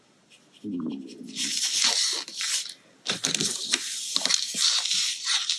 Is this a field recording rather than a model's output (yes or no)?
yes